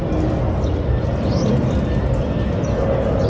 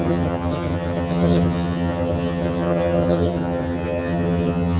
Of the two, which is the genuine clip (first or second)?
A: first